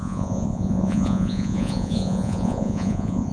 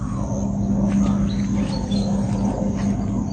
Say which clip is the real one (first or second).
second